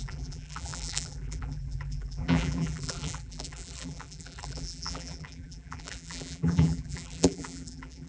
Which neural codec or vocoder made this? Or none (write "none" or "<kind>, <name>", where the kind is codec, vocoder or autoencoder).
vocoder, BigVGAN v2